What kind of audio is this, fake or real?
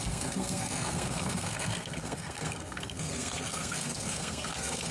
fake